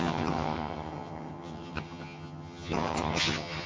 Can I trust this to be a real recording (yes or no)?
no